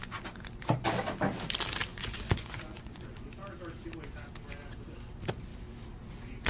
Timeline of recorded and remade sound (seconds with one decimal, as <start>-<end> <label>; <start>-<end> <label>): 0.0-1.9 recorded; 1.9-3.3 remade; 3.3-6.5 recorded